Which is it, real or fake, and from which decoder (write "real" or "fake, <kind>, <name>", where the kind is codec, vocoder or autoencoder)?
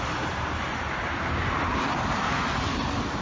real